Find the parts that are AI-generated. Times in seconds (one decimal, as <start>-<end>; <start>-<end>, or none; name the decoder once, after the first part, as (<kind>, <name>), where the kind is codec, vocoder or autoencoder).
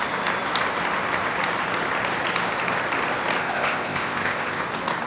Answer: 3.4-4.6 (codec, ZipCodec)